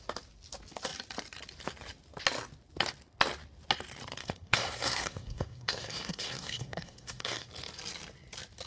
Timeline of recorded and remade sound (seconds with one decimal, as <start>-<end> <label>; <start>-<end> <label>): 0.0-4.2 recorded; 4.2-7.5 remade; 7.5-8.7 recorded